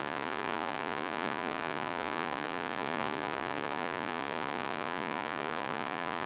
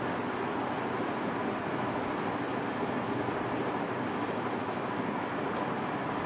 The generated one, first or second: first